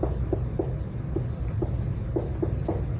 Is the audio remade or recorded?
recorded